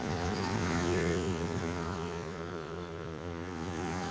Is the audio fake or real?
fake